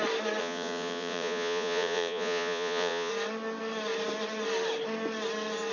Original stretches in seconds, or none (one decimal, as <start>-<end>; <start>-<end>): 0.0-0.4; 3.1-5.7